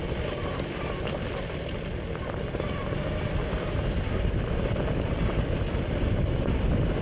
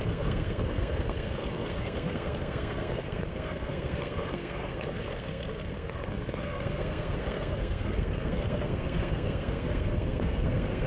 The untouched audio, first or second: first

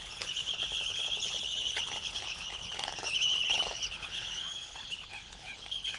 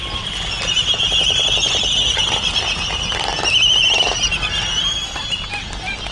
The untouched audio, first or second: second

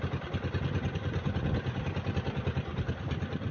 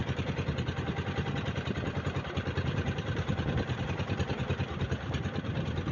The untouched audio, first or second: first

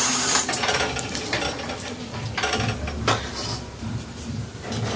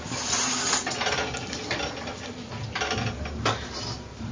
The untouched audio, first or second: second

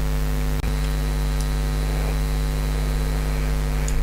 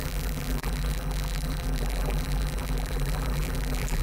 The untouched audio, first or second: first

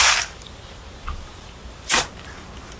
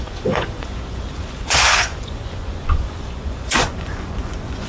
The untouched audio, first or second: first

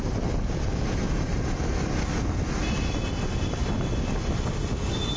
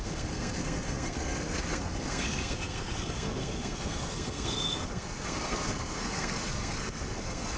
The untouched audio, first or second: first